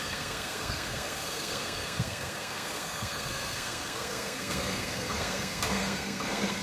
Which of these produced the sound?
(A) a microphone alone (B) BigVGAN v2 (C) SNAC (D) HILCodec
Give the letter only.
C